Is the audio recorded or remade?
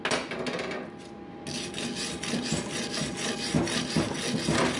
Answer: recorded